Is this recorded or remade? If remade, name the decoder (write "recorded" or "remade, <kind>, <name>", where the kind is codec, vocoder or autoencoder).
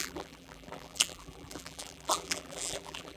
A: remade, vocoder, BigVGAN v2